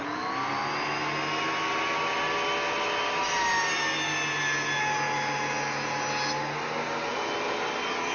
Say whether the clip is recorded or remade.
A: recorded